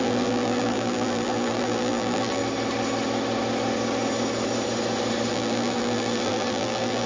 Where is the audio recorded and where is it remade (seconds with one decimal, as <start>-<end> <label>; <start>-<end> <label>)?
0.0-2.4 remade; 2.4-5.3 recorded; 5.3-7.1 remade

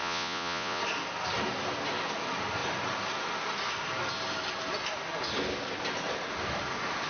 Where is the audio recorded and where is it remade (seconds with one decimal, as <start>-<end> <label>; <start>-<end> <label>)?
0.0-0.8 remade; 0.8-7.1 recorded

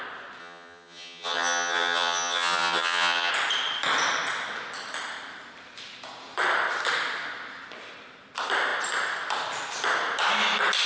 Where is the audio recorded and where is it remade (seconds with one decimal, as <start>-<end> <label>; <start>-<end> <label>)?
0.0-0.4 recorded; 0.4-3.3 remade; 3.3-10.9 recorded

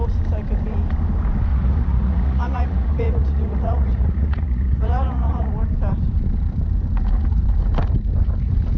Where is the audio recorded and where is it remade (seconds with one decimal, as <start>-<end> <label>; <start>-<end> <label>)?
0.0-1.5 recorded; 1.5-5.5 remade; 5.5-8.8 recorded

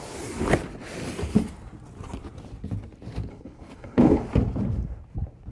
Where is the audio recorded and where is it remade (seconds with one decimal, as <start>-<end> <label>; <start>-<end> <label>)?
0.0-3.3 recorded; 3.3-4.2 remade; 4.2-5.5 recorded

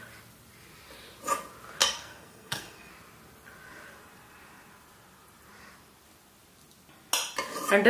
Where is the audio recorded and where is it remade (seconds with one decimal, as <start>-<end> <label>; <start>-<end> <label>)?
0.0-1.8 recorded; 1.8-2.9 remade; 2.9-7.9 recorded

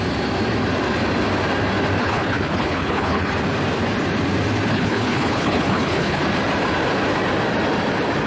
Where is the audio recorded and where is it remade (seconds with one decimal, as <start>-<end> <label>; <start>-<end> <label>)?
0.0-2.0 recorded; 2.0-3.3 remade; 3.3-4.7 recorded; 4.7-6.2 remade; 6.2-8.3 recorded

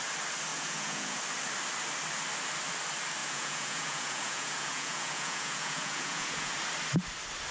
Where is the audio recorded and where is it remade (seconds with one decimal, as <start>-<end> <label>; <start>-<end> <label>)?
0.0-0.5 recorded; 0.5-1.2 remade; 1.2-3.2 recorded; 3.2-6.5 remade; 6.5-7.5 recorded